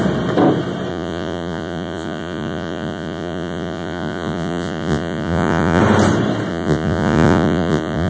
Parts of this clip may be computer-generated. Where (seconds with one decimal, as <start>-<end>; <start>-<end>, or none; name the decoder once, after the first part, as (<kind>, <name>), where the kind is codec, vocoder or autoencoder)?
0.9-5.8 (vocoder, Vocos); 6.5-8.1